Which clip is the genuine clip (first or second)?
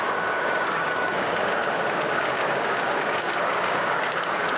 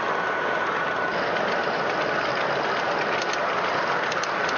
second